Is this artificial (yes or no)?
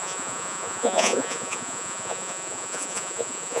yes